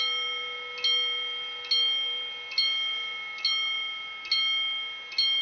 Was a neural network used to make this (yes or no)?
no